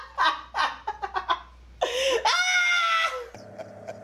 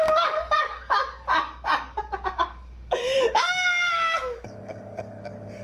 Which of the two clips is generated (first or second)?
second